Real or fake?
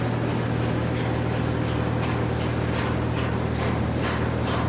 real